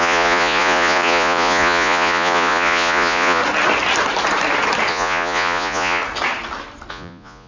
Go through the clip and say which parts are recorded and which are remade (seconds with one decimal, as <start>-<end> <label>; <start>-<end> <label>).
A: 0.0-3.4 remade; 3.4-4.9 recorded; 4.9-6.0 remade; 6.0-6.9 recorded; 6.9-7.5 remade